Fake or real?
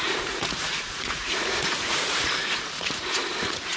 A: fake